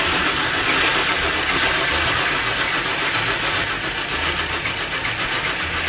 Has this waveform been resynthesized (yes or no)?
no